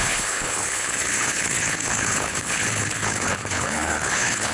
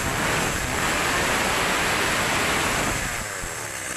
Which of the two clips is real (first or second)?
second